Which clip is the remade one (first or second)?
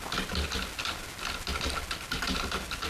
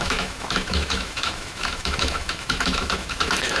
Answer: second